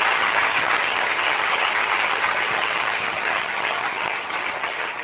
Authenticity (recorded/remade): remade